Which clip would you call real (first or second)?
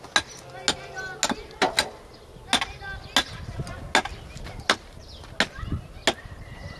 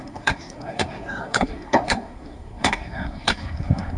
first